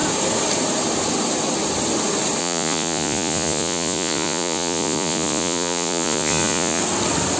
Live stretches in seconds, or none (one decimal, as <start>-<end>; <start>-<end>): 0.0-2.4; 6.8-7.4